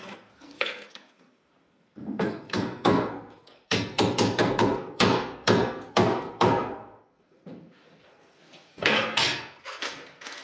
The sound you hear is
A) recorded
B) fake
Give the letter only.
B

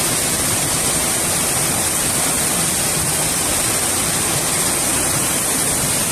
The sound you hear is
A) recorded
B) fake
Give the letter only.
A